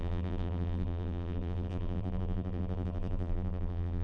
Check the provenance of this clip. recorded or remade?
remade